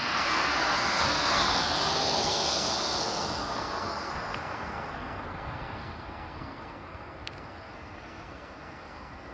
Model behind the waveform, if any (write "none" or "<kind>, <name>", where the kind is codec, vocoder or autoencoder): codec, SNAC